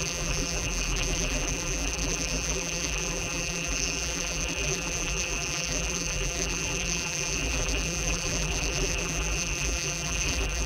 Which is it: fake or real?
fake